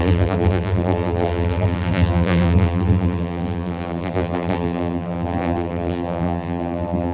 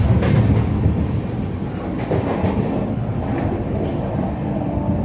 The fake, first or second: first